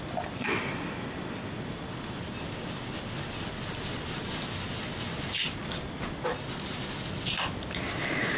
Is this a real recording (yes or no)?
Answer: yes